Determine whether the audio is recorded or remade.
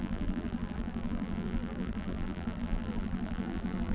remade